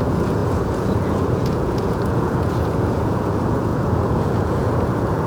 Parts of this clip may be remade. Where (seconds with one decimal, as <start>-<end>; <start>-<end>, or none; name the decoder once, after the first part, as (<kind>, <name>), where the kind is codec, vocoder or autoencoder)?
0.0-5.3 (vocoder, Vocos)